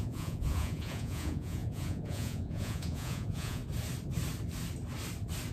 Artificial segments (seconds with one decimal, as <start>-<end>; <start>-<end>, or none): 0.0-3.6